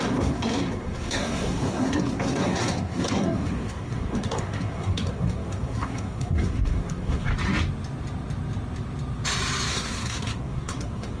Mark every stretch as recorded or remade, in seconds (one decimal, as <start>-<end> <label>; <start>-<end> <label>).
0.0-7.3 remade; 7.3-9.7 recorded; 9.7-11.2 remade